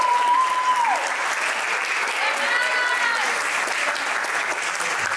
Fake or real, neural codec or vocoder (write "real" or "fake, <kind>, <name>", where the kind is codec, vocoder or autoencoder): real